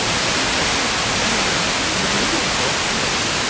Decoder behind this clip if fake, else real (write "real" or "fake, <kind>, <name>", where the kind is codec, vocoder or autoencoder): real